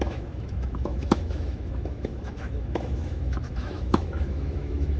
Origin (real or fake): fake